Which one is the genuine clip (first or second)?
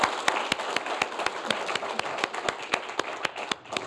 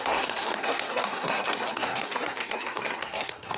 first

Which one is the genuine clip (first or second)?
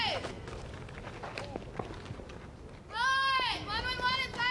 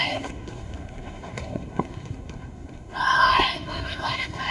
first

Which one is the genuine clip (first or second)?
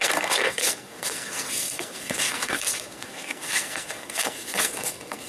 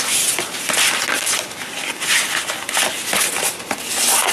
second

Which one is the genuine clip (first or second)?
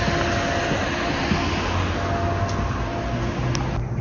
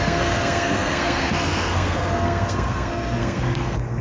first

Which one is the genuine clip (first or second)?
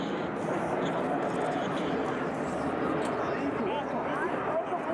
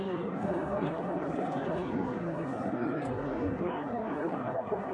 first